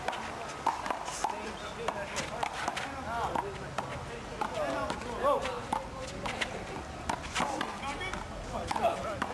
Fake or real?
real